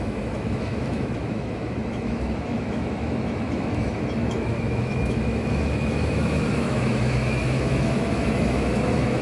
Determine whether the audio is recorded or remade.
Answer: remade